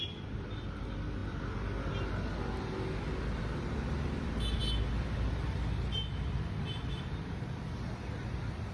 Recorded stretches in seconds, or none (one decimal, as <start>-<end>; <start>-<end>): 0.0-8.7